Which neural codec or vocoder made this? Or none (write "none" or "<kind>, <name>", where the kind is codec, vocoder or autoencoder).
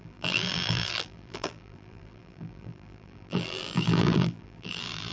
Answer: vocoder, BigVGAN v2